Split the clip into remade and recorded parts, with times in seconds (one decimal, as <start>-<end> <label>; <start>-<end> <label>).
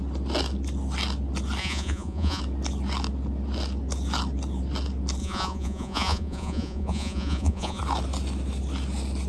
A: 0.0-1.6 recorded; 1.6-2.4 remade; 2.4-5.2 recorded; 5.2-7.8 remade; 7.8-9.3 recorded